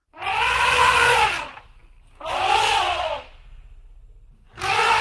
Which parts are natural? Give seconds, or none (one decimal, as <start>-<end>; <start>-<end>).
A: 1.3-5.0